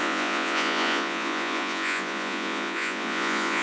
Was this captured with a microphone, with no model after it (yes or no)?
no